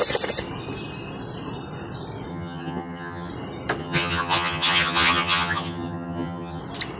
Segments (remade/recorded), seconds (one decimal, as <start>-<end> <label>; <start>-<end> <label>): 0.0-2.3 recorded; 2.3-3.3 remade; 3.3-3.8 recorded; 3.8-6.6 remade; 6.6-7.0 recorded